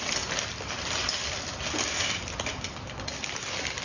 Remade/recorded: recorded